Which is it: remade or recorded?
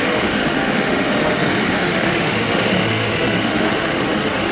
remade